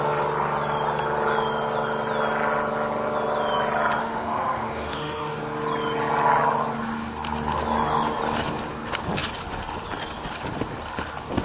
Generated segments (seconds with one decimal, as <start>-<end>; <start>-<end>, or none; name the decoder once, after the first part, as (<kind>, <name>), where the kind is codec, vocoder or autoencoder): 4.0-5.4 (autoencoder, DAC-VAE)